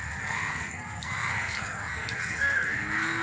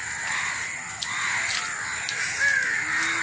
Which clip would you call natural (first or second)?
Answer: second